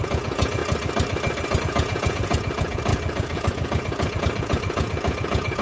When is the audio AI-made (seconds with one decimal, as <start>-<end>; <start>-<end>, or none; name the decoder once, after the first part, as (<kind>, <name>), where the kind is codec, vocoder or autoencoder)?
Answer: 0.0-0.6 (vocoder, Vocos); 1.6-5.6

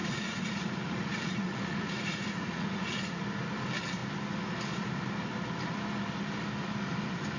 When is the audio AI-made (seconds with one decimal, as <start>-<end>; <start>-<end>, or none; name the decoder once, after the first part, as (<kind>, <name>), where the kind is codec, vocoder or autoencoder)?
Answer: 0.0-3.2 (vocoder, Vocos)